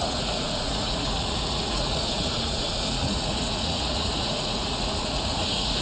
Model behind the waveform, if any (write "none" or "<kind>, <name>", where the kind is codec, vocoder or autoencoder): vocoder, Vocos